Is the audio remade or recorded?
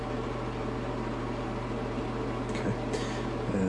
recorded